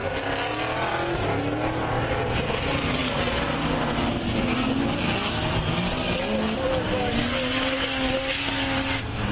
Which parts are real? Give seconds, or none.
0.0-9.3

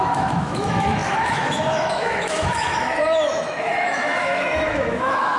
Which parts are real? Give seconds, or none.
none

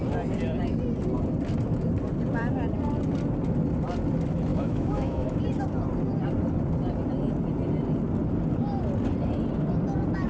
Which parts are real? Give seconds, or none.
0.0-4.5; 5.4-10.3